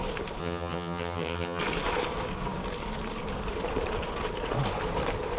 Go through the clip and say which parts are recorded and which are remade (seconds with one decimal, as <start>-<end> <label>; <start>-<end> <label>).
0.0-0.4 recorded; 0.4-1.6 remade; 1.6-5.4 recorded